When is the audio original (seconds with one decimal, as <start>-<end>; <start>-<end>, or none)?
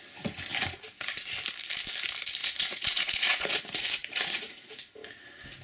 0.0-2.4; 4.7-5.6